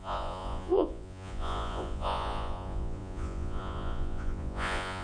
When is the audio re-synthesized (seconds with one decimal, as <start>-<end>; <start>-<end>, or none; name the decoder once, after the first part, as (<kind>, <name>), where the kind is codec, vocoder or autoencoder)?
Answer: 0.0-5.0 (vocoder, Vocos)